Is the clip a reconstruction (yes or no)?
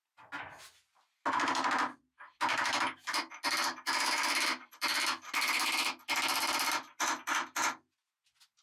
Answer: no